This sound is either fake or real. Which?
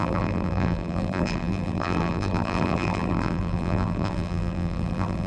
fake